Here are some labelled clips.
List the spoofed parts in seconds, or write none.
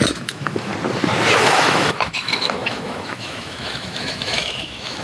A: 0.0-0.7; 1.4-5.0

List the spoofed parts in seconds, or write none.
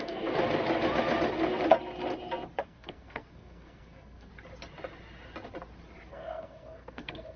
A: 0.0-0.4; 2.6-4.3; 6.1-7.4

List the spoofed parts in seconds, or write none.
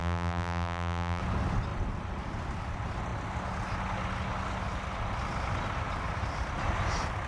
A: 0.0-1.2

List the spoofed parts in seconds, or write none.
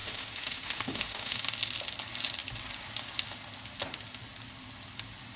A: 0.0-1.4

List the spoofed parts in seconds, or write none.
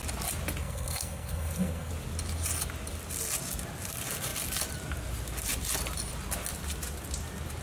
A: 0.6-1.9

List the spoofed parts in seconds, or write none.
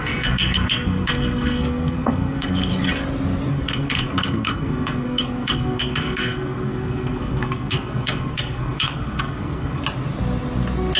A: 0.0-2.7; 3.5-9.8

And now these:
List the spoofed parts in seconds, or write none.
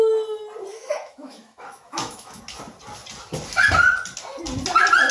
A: 0.7-2.4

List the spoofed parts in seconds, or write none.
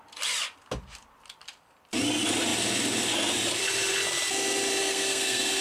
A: 4.8-5.6